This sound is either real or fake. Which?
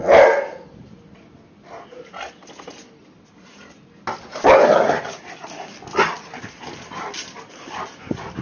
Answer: real